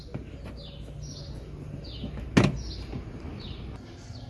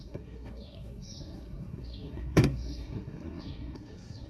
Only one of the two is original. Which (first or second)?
first